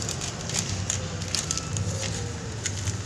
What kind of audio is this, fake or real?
real